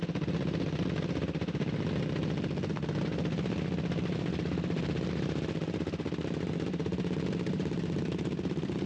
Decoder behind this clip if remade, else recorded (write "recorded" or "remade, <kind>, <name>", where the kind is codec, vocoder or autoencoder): recorded